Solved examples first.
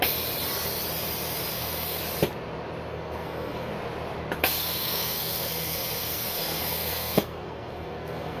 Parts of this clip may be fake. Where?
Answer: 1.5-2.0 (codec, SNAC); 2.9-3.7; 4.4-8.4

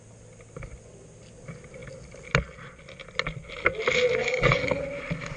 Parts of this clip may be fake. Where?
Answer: 4.2-4.8 (codec, DAC)

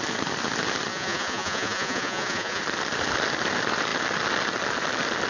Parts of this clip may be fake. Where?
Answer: 0.9-2.6 (vocoder, Vocos)